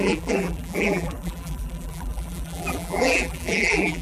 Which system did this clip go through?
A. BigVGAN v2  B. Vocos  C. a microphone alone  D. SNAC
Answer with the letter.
A